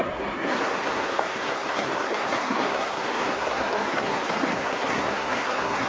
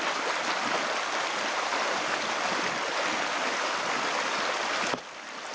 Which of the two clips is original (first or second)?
second